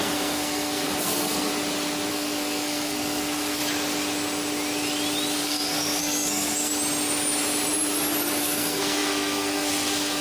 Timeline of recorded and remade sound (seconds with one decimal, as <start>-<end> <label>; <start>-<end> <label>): 0.0-1.5 remade; 1.5-2.1 recorded; 2.1-3.6 remade; 3.6-5.4 recorded; 5.4-6.7 remade; 6.7-8.4 recorded; 8.4-10.2 remade